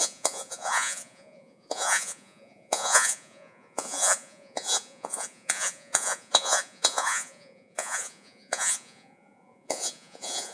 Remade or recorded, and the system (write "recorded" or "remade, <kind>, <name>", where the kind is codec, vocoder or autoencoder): remade, vocoder, Vocos